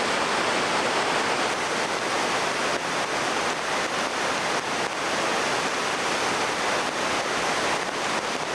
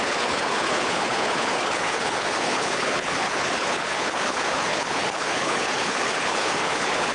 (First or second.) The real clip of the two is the first